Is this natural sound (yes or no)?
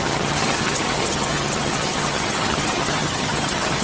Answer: no